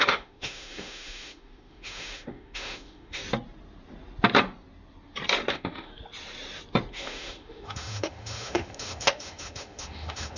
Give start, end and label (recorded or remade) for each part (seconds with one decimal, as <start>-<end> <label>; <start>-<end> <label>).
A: 0.0-3.2 remade; 3.2-5.5 recorded; 5.5-5.9 remade; 5.9-6.9 recorded; 6.9-10.4 remade

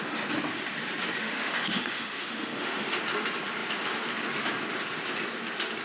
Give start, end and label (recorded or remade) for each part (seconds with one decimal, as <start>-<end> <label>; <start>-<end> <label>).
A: 0.0-1.2 recorded; 1.2-3.0 remade; 3.0-5.8 recorded

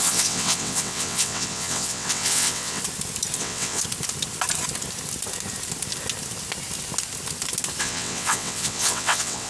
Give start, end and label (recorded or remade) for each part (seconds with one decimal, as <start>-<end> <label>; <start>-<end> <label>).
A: 0.0-2.8 remade; 2.8-3.4 recorded; 3.4-3.8 remade; 3.8-7.8 recorded; 7.8-9.5 remade

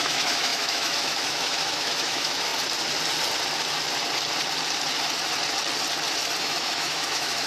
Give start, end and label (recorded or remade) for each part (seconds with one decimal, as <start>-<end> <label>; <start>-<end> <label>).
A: 0.0-2.5 remade; 2.5-6.4 recorded; 6.4-7.5 remade

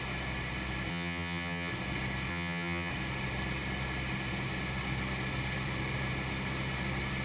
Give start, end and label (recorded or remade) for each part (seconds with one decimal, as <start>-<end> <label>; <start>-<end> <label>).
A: 0.0-0.9 recorded; 0.9-1.7 remade; 1.7-2.3 recorded; 2.3-2.9 remade; 2.9-7.2 recorded

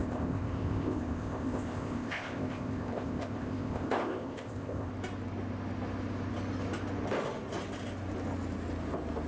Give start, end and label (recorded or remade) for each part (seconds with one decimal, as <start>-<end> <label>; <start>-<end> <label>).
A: 0.0-4.9 remade; 4.9-9.3 recorded

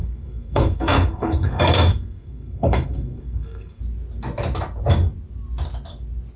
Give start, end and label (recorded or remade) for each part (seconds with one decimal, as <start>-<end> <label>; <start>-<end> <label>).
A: 0.0-3.8 remade; 3.8-6.4 recorded

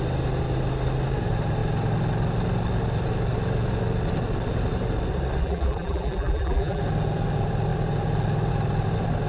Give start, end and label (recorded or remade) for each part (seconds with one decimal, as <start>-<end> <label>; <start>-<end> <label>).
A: 0.0-5.4 recorded; 5.4-6.8 remade; 6.8-9.3 recorded